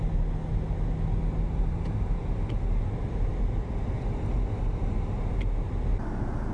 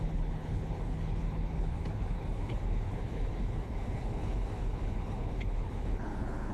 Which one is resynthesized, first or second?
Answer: second